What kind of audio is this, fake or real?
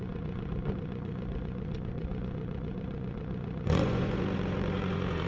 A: fake